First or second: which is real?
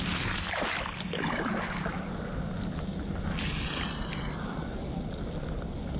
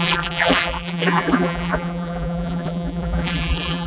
first